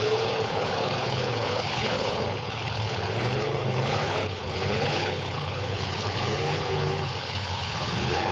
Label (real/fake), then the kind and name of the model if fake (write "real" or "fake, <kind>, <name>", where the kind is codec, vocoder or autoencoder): fake, codec, HILCodec